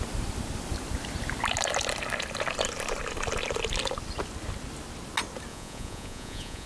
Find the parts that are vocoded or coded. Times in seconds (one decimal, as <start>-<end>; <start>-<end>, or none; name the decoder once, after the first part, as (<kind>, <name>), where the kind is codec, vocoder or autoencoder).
5.5-6.7 (vocoder, Vocos)

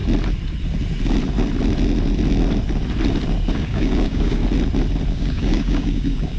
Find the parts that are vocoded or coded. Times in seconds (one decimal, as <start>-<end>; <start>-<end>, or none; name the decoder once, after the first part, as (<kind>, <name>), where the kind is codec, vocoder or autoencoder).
3.5-4.4 (codec, DAC); 5.1-6.4